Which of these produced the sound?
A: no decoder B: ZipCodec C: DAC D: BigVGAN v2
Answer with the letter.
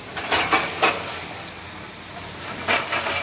A